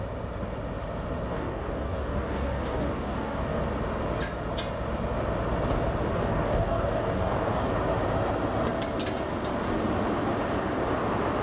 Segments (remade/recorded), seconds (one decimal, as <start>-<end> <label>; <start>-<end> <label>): 0.0-1.3 recorded; 1.3-3.6 remade; 3.6-6.1 recorded; 6.1-7.7 remade; 7.7-11.4 recorded